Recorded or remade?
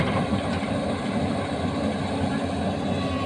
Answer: recorded